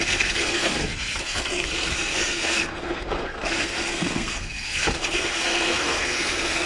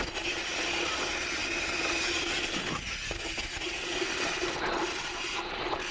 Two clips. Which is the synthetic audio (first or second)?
first